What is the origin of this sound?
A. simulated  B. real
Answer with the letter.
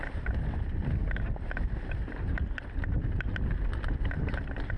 B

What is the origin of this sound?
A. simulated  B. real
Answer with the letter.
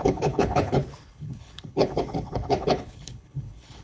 A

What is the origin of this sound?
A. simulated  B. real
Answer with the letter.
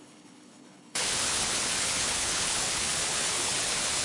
A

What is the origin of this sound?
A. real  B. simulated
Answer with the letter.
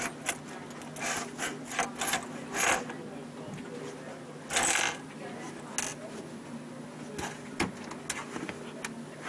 A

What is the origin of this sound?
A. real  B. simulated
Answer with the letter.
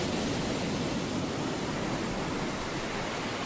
A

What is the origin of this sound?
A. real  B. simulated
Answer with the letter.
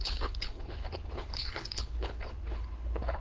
B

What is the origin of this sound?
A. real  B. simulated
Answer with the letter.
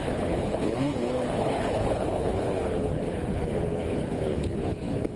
B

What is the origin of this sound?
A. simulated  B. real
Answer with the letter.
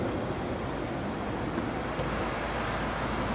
B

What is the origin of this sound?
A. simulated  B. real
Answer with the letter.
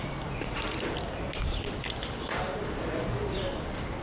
B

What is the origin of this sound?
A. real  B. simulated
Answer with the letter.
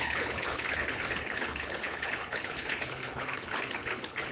B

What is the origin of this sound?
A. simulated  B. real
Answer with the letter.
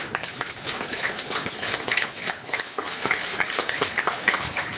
A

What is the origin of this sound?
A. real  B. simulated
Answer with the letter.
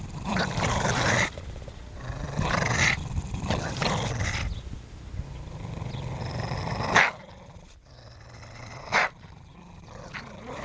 A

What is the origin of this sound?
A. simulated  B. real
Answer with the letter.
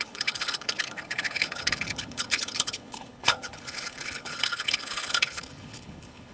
A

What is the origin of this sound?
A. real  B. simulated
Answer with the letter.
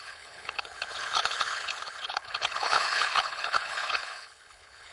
B